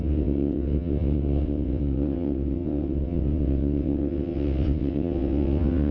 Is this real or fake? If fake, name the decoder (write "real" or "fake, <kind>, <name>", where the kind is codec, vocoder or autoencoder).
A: fake, vocoder, WaveNeXt